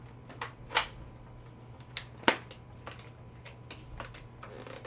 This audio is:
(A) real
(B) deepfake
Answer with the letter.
A